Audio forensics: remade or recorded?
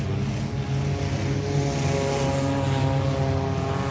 recorded